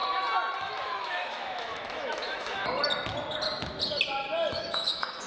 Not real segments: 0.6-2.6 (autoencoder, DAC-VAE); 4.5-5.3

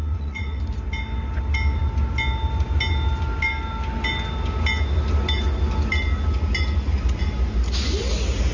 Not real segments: 0.0-0.6 (vocoder, Vocos)